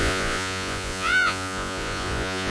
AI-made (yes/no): yes